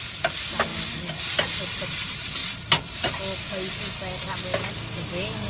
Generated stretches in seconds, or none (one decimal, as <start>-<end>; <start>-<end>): none